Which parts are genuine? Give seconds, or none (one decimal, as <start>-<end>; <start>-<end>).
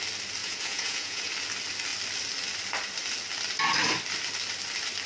0.0-0.4; 1.3-5.1